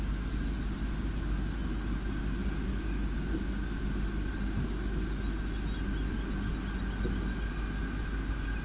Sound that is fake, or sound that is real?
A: real